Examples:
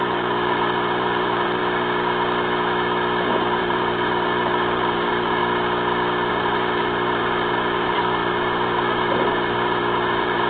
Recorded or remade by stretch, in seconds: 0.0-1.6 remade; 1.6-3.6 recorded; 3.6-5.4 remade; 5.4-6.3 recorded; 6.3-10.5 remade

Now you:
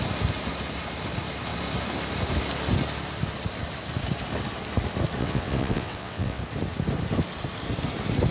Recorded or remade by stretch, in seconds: 0.0-5.2 recorded; 5.2-6.4 remade; 6.4-8.3 recorded